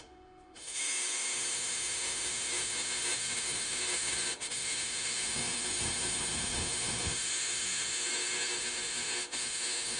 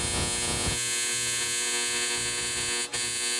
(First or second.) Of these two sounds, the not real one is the first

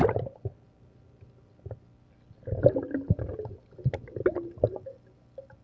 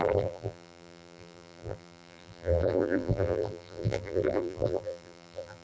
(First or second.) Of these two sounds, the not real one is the second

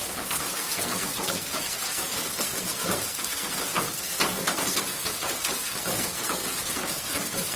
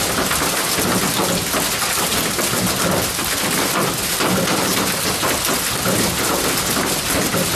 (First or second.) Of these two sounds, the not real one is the first